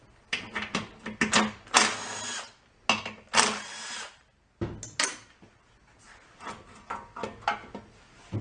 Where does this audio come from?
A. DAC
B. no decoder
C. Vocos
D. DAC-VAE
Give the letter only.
B